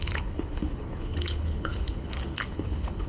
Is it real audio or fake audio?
fake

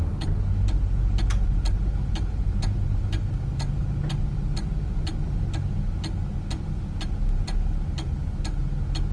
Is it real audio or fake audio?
real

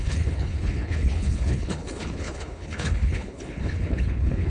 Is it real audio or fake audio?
fake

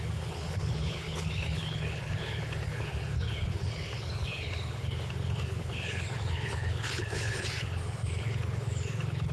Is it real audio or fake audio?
fake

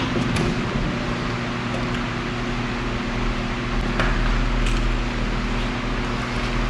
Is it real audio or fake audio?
real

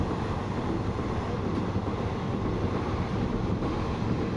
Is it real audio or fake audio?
real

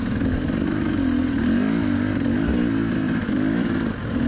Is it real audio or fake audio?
real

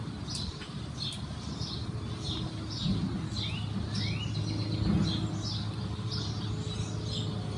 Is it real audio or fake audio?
real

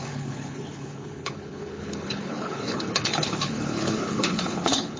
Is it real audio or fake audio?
fake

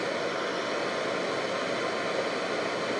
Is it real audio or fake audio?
real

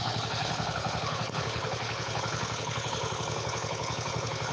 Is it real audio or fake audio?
fake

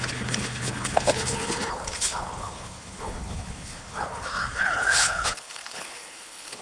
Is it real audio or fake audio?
fake